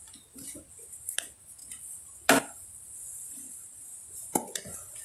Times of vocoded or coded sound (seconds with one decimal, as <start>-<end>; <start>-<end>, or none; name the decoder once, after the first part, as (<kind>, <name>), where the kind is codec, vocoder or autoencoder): 1.6-4.6 (vocoder, BigVGAN v2)